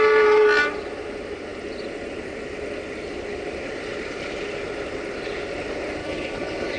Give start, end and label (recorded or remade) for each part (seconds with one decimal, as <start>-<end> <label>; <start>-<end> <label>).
0.0-6.0 recorded; 6.0-6.8 remade